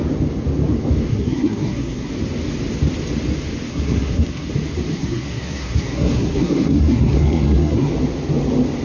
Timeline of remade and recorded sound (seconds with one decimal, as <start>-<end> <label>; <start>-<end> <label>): 0.0-1.1 recorded; 1.1-2.1 remade; 2.1-3.7 recorded; 3.7-4.5 remade; 4.5-4.9 recorded; 4.9-7.9 remade; 7.9-8.8 recorded

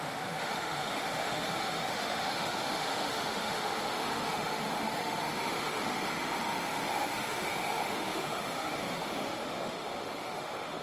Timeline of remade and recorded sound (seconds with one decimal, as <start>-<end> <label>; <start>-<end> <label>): 0.0-10.8 remade

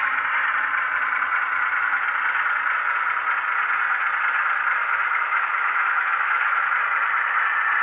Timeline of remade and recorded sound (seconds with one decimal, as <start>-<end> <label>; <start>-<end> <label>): 0.0-4.8 recorded; 4.8-6.7 remade; 6.7-7.8 recorded

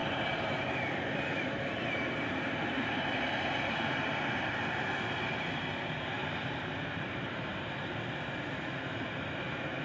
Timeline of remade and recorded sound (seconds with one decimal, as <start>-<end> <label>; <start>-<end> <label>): 0.0-5.0 remade; 5.0-6.2 recorded; 6.2-7.7 remade; 7.7-9.8 recorded

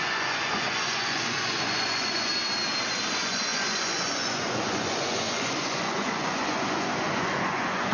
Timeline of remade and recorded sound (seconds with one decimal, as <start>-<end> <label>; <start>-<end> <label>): 0.0-2.3 remade; 2.3-3.1 recorded; 3.1-7.9 remade